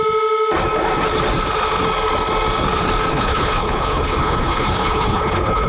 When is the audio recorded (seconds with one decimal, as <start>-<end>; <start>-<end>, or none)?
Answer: 0.0-3.1